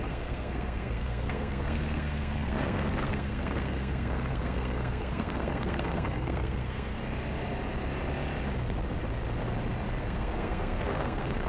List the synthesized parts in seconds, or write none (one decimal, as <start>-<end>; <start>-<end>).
0.0-7.0; 10.0-11.5